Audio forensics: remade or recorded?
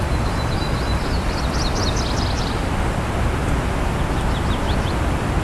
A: recorded